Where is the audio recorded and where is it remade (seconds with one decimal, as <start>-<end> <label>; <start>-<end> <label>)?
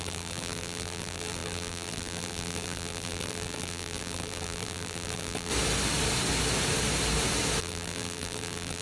0.0-5.5 remade; 5.5-7.6 recorded; 7.6-8.8 remade